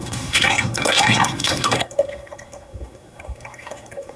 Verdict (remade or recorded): remade